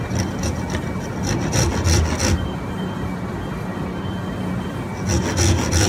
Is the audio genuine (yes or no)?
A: yes